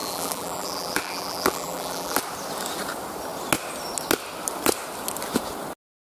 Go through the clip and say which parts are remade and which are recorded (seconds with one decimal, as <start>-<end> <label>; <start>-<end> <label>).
0.0-2.2 remade; 2.2-6.0 recorded